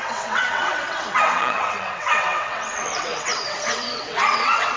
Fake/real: fake